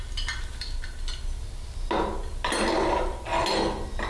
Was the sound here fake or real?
real